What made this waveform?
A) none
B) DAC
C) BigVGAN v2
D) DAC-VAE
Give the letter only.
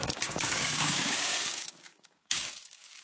B